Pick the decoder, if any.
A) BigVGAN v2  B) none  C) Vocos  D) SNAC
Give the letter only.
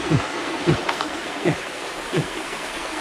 D